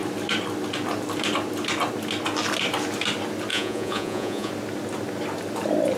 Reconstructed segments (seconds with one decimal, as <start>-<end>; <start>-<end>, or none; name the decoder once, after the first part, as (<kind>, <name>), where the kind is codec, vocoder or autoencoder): 3.5-4.5 (vocoder, Vocos)

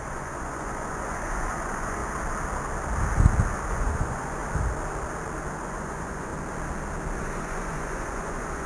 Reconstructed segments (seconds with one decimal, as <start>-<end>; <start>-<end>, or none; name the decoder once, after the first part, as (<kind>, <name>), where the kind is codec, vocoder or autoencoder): 0.0-2.0 (vocoder, Vocos); 3.7-4.4; 5.6-6.3; 7.2-8.7

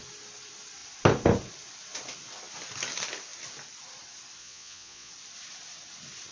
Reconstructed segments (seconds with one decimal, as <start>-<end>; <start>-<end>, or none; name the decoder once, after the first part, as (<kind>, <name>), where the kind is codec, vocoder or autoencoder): 4.4-5.1 (vocoder, Vocos)

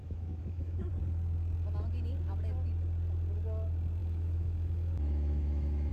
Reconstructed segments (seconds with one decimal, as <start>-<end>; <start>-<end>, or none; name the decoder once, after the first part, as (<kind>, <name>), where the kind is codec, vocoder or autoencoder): 0.0-0.9 (autoencoder, DAC-VAE); 4.0-5.9

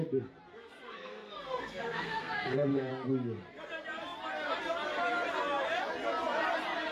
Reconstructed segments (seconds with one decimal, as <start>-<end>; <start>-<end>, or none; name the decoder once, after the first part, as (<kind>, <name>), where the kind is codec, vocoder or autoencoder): 0.5-2.9 (codec, SNAC)